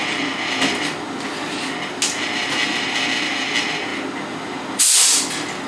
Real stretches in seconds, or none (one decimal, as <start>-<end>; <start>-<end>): 0.0-5.7